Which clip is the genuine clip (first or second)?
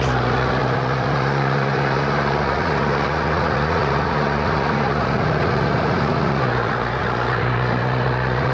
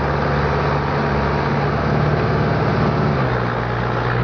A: second